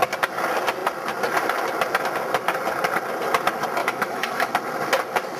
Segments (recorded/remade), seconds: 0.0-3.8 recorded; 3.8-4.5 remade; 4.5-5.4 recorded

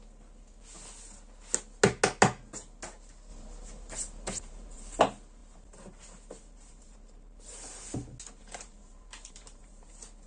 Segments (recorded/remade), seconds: 0.0-3.3 recorded; 3.3-5.0 remade; 5.0-5.4 recorded; 5.4-7.8 remade; 7.8-8.4 recorded; 8.4-9.9 remade; 9.9-10.3 recorded

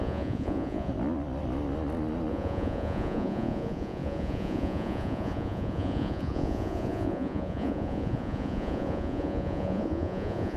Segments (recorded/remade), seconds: 0.0-0.9 remade; 0.9-2.3 recorded; 2.3-10.6 remade

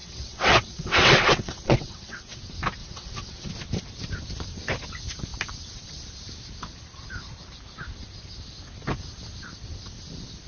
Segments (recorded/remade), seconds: 0.0-2.4 remade; 2.4-2.8 recorded; 2.8-3.5 remade; 3.5-10.5 recorded

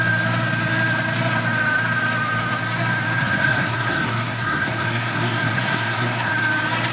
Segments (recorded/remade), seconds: 0.0-3.2 recorded; 3.2-6.3 remade; 6.3-6.9 recorded

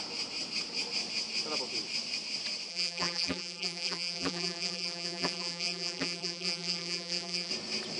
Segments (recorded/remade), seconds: 0.0-2.7 recorded; 2.7-7.5 remade; 7.5-8.0 recorded